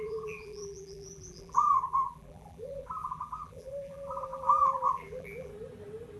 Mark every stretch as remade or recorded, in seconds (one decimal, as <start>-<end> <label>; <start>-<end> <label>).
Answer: 0.0-5.5 remade; 5.5-6.2 recorded